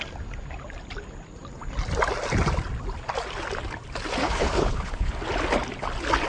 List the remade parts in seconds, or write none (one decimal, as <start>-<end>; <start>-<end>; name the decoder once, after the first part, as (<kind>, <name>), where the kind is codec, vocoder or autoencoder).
4.2-5.1 (codec, HILCodec)